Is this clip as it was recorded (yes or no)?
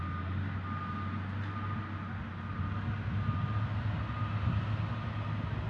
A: yes